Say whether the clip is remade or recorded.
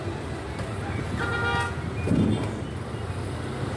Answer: recorded